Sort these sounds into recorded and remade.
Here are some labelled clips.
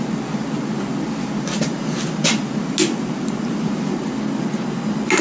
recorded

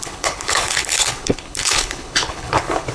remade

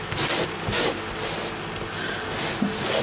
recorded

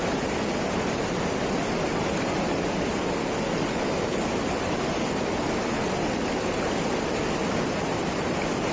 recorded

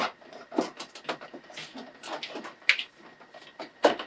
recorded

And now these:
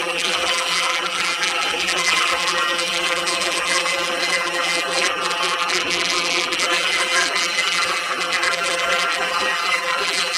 remade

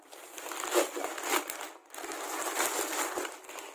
recorded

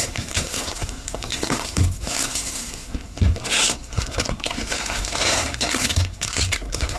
remade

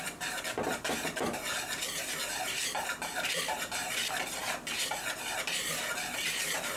remade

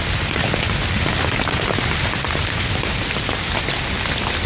recorded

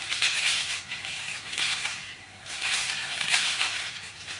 remade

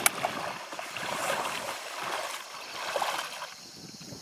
recorded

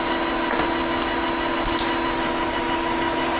recorded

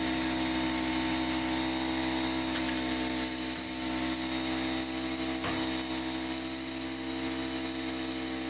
recorded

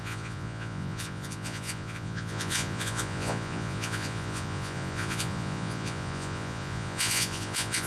remade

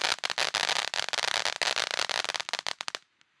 recorded